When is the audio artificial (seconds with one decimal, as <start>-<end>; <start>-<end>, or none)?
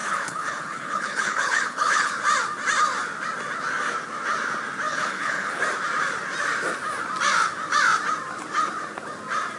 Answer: 0.0-2.1; 4.9-5.6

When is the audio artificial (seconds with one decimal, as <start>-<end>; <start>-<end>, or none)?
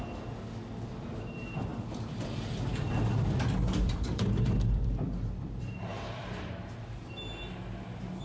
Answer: 1.7-6.6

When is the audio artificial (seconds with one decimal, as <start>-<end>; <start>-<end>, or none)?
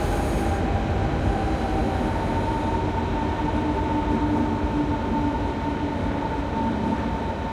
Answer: none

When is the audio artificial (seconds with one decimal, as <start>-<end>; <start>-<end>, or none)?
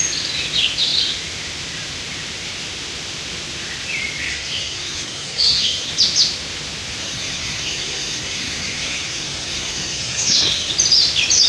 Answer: 4.3-5.9; 7.0-10.7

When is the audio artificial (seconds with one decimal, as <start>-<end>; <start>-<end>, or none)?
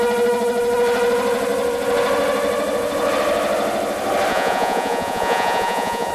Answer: 4.3-6.1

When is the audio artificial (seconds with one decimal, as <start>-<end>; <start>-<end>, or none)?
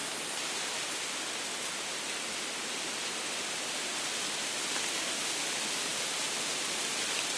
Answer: none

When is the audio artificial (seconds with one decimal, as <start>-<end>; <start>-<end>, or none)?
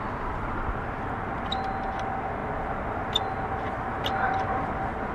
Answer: none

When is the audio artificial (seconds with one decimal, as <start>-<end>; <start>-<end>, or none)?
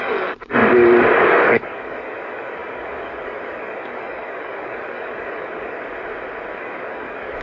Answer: 0.0-0.6; 1.2-5.9; 6.6-7.4